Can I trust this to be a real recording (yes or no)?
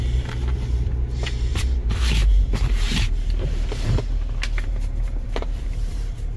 no